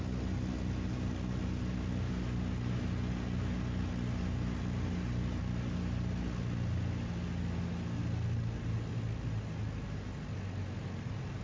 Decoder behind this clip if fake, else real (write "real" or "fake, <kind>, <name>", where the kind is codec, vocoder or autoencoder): real